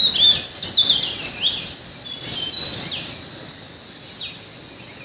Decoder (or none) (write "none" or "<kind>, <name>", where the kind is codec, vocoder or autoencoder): none